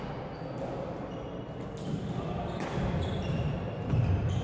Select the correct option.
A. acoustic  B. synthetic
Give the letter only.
A